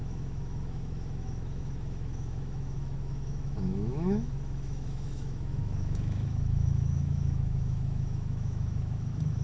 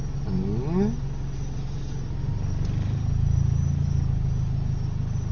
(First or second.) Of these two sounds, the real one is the second